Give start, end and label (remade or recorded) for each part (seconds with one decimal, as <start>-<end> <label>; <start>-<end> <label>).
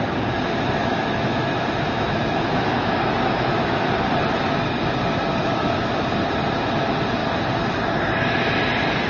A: 0.0-0.8 recorded; 0.8-3.9 remade; 3.9-5.3 recorded; 5.3-6.0 remade; 6.0-9.1 recorded